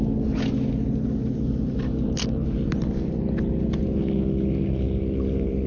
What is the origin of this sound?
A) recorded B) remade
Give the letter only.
A